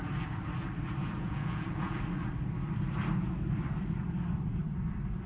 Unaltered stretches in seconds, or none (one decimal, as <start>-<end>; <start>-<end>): 0.0-1.0; 2.0-5.3